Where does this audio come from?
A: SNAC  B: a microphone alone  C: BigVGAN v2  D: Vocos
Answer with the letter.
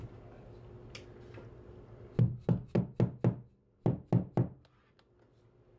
B